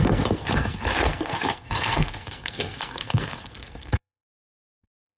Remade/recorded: remade